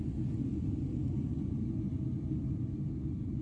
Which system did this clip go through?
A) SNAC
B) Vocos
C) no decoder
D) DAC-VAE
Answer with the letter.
C